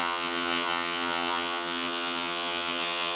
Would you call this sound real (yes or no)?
no